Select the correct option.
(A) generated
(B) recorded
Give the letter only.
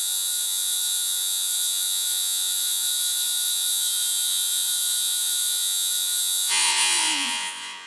A